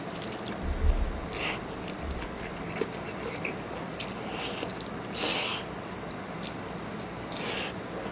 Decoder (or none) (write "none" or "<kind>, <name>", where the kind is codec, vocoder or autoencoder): none